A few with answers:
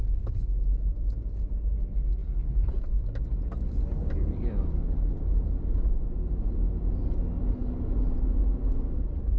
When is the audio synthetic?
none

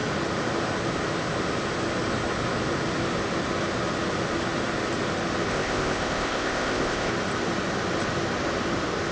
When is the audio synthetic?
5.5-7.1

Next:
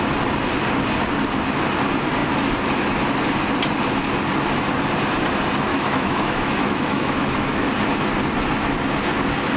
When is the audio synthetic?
5.7-7.7